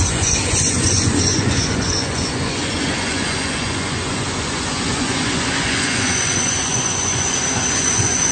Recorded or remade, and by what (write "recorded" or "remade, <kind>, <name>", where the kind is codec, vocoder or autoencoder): remade, vocoder, Vocos